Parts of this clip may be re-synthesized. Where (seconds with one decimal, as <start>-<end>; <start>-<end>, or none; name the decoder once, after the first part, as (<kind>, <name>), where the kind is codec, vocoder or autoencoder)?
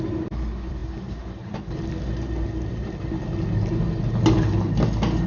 none